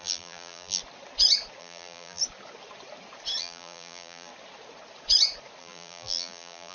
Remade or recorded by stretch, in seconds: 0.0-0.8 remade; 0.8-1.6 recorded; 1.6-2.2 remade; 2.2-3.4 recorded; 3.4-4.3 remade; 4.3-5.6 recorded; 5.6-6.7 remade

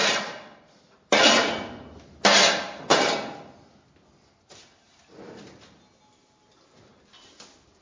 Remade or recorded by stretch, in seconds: 0.0-7.8 recorded

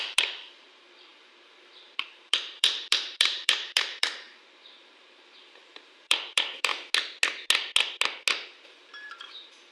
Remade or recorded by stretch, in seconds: 0.0-6.7 remade; 6.7-8.8 recorded; 8.8-9.7 remade